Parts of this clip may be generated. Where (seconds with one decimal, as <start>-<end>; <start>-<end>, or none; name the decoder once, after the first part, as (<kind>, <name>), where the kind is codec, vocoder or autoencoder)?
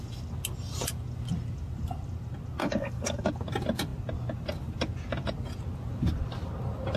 2.6-3.3 (codec, DAC)